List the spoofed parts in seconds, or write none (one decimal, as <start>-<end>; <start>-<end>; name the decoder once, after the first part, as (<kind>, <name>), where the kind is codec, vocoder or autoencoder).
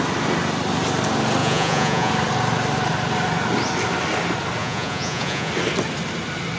1.4-2.1 (vocoder, Vocos); 4.6-5.5